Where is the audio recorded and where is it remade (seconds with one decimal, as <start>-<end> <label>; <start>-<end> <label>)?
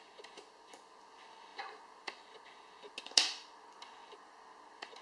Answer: 0.0-5.0 recorded